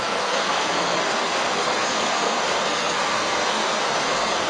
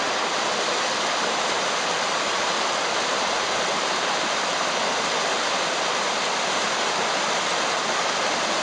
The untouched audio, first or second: second